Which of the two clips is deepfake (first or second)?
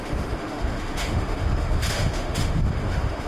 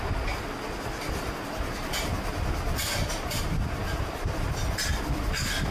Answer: first